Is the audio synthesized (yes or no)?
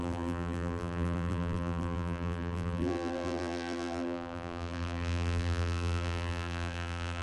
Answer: yes